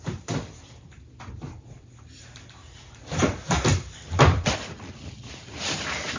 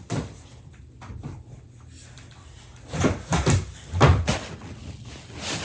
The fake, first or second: first